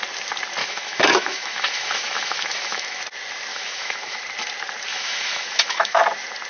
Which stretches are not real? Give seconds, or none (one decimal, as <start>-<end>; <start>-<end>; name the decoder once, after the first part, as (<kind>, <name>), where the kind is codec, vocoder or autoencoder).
0.6-3.0 (autoencoder, DAC-VAE); 3.5-4.2; 4.9-6.0